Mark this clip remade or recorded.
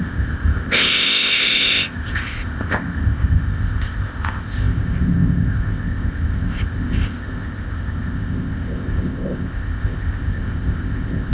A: remade